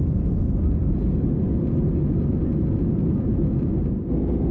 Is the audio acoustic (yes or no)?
yes